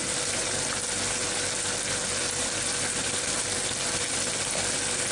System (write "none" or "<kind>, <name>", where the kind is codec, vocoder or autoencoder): none